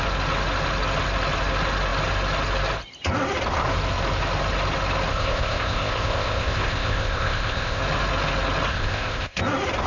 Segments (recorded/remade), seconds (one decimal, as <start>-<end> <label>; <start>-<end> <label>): 0.0-5.1 recorded; 5.1-7.8 remade; 7.8-8.7 recorded; 8.7-9.4 remade; 9.4-9.9 recorded